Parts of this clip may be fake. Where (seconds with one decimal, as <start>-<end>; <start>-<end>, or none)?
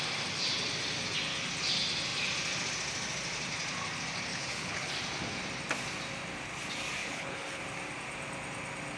4.3-4.9; 7.0-7.6